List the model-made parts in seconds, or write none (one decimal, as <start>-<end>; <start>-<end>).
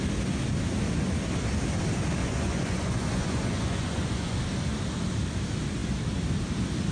2.2-4.4